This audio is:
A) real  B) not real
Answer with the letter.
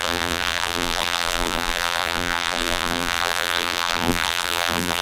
B